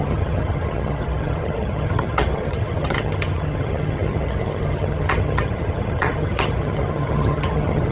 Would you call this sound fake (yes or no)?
yes